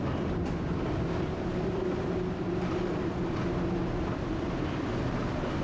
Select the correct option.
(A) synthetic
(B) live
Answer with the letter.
B